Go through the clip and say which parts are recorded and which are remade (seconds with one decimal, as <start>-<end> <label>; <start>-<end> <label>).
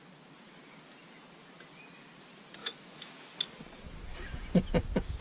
0.0-2.6 recorded; 2.6-3.3 remade; 3.3-5.2 recorded